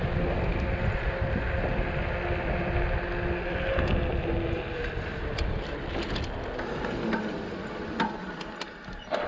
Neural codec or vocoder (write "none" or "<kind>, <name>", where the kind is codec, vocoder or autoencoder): none